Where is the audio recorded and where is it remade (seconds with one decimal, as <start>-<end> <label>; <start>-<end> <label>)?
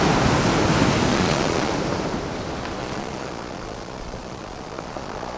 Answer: 0.0-1.1 recorded; 1.1-1.7 remade; 1.7-2.8 recorded; 2.8-5.4 remade